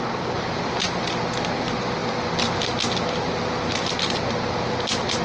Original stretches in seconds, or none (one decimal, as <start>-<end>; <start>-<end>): 0.0-5.2